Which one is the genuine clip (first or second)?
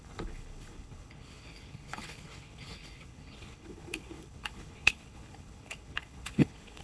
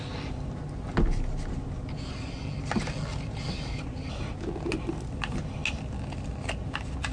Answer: second